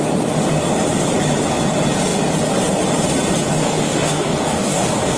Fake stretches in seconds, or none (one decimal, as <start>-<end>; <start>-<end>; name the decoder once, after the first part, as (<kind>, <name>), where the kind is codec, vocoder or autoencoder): 3.6-5.2 (codec, DAC)